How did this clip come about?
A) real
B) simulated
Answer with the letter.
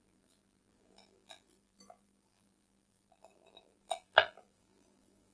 B